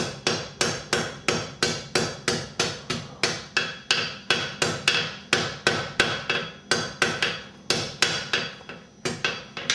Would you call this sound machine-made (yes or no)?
no